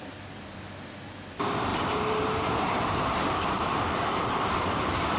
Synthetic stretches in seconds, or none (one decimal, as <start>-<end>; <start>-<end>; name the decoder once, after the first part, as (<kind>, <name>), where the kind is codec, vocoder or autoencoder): 1.7-4.8 (vocoder, BigVGAN v2)